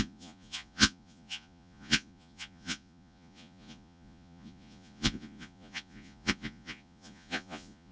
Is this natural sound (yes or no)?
no